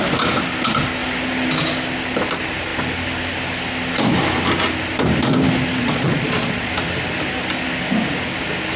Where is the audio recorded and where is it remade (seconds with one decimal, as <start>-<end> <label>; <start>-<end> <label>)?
0.0-5.8 recorded; 5.8-6.7 remade; 6.7-8.8 recorded